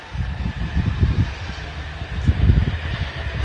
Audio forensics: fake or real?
real